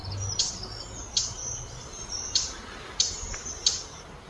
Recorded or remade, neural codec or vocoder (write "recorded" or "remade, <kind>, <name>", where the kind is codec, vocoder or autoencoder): recorded